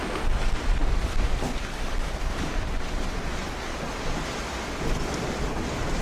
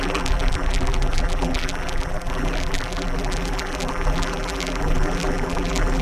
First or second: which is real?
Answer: first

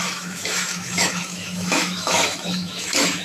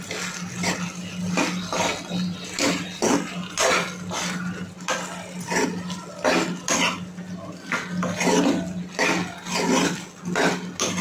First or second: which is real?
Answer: second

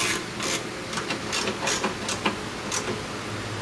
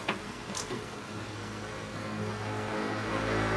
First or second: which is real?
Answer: first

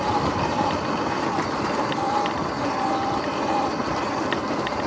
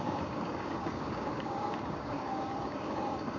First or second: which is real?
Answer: first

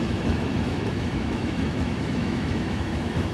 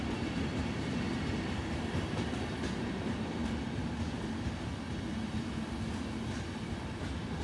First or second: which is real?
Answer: second